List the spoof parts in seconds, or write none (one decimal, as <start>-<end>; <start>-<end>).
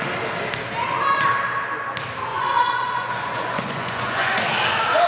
2.3-4.4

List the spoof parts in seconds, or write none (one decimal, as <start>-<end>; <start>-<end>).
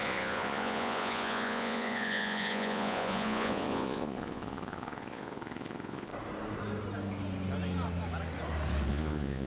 0.0-6.1; 8.9-9.5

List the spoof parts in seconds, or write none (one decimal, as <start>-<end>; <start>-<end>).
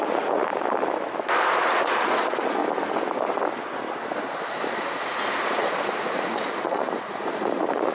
0.0-0.5; 2.0-2.6; 4.7-7.9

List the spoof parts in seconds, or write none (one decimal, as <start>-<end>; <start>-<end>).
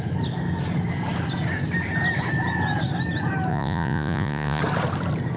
3.5-4.6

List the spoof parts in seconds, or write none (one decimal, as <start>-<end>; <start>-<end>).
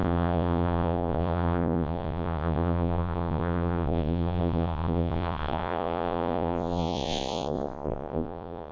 0.0-8.7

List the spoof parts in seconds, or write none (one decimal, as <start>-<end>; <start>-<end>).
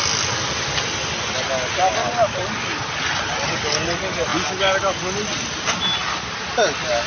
none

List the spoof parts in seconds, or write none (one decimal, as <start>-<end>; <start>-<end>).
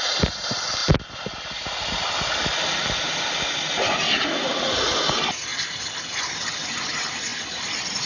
none